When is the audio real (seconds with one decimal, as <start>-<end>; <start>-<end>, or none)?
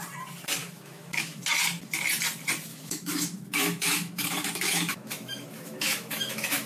0.0-0.6; 1.4-2.7